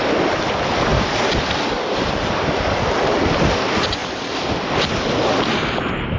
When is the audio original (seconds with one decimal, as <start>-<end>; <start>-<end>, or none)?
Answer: 0.0-6.2